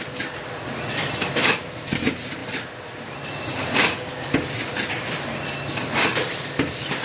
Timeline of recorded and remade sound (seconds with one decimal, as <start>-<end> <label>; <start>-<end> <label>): 0.0-7.0 recorded